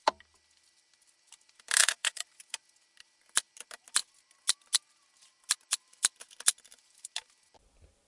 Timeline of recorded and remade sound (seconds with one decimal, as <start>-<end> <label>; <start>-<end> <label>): 0.0-1.8 recorded; 1.8-2.4 remade; 2.4-8.1 recorded